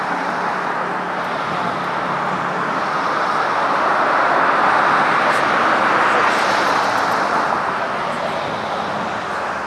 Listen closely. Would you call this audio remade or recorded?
recorded